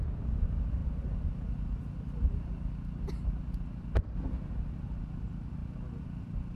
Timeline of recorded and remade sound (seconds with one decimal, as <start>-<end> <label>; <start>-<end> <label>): 0.0-6.6 recorded